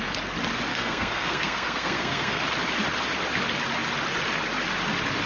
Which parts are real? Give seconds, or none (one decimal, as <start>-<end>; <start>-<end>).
0.0-0.7; 2.4-5.3